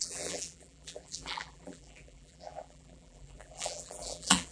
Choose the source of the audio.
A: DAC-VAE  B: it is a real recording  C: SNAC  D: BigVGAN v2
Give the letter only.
D